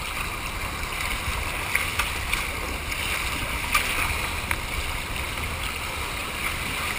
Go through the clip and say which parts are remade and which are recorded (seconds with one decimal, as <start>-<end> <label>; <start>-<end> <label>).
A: 0.0-6.2 recorded; 6.2-7.0 remade

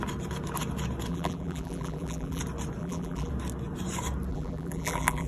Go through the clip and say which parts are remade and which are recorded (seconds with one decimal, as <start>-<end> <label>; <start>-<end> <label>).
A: 0.0-1.1 recorded; 1.1-2.4 remade; 2.4-2.8 recorded; 2.8-3.3 remade; 3.3-4.3 recorded; 4.3-5.3 remade